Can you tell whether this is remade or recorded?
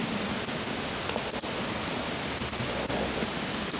recorded